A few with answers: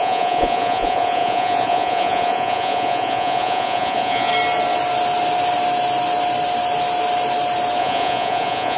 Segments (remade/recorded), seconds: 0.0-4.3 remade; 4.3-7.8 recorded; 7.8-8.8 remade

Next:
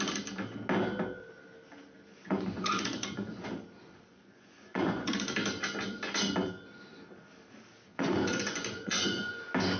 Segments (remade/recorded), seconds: 0.0-2.1 recorded; 2.1-3.5 remade; 3.5-4.1 recorded; 4.1-5.1 remade; 5.1-7.9 recorded; 7.9-9.4 remade; 9.4-9.8 recorded

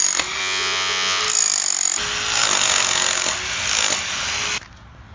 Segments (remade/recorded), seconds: 0.0-0.4 recorded; 0.4-1.2 remade; 1.2-5.1 recorded